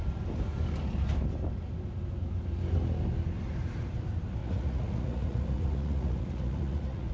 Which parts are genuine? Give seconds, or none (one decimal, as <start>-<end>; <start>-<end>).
0.0-4.4